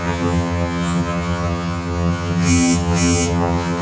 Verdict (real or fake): fake